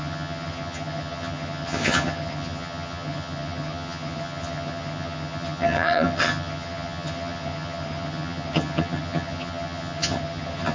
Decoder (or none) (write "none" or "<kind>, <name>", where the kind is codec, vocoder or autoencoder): vocoder, HiFi-GAN